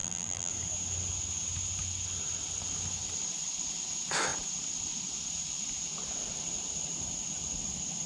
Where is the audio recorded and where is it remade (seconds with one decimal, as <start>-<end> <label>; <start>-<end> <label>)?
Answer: 0.0-0.5 remade; 0.5-8.1 recorded